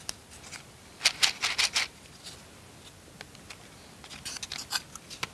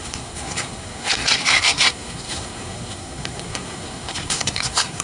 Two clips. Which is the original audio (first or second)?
first